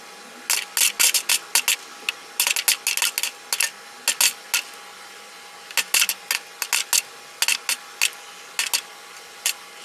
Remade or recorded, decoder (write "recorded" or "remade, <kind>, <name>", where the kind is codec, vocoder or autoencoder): recorded